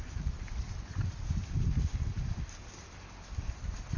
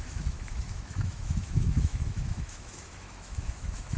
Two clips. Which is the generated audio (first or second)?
second